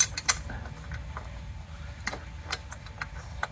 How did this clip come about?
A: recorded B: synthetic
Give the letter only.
A